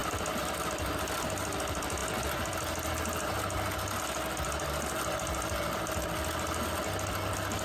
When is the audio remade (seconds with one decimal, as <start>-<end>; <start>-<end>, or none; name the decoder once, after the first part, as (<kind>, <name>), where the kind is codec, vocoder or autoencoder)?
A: 0.0-0.8 (vocoder, BigVGAN v2)

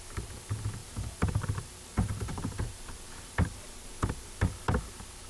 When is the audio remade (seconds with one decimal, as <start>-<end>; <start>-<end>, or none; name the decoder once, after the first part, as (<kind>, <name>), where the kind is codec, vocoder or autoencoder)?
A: 0.8-3.9 (vocoder, BigVGAN v2)

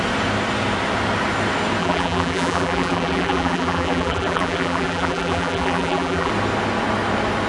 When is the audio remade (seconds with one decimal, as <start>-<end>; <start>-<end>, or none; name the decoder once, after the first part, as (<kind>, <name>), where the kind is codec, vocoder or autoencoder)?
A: 1.8-6.3 (vocoder, BigVGAN v2)

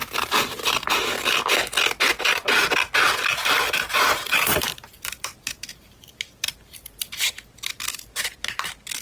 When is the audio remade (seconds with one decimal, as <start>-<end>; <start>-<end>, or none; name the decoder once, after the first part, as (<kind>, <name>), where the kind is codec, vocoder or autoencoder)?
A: 0.0-1.0 (vocoder, BigVGAN v2); 3.3-7.2

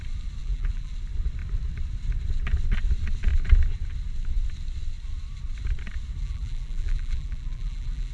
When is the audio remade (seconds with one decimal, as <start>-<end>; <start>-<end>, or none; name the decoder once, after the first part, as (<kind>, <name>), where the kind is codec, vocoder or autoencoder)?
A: 0.4-0.9 (vocoder, BigVGAN v2); 6.2-8.1

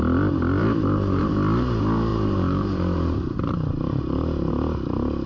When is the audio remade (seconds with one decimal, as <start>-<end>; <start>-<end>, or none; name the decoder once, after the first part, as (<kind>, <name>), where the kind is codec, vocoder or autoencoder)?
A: 0.6-1.2 (vocoder, BigVGAN v2); 2.1-4.5